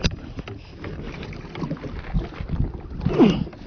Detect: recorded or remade recorded